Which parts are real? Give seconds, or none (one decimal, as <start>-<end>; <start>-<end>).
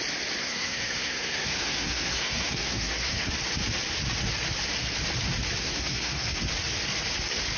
0.0-0.4; 3.3-5.6; 6.4-7.6